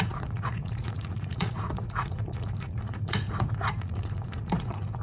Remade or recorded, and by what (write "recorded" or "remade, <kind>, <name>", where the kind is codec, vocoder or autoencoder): remade, vocoder, Vocos